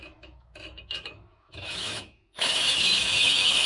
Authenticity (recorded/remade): remade